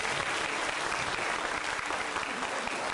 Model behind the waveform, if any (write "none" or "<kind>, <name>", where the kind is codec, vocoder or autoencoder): none